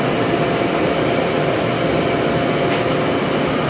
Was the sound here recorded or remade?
recorded